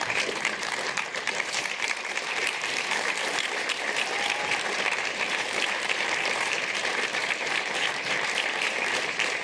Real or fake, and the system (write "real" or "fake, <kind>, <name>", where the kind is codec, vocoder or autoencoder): fake, vocoder, BigVGAN v2